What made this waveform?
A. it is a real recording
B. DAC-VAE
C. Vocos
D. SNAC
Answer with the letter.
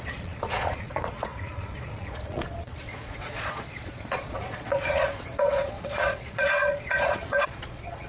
C